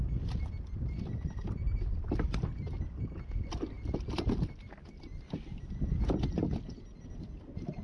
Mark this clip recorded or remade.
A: recorded